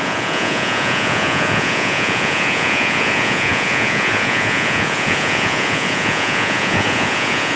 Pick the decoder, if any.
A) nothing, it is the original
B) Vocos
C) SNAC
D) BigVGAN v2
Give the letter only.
B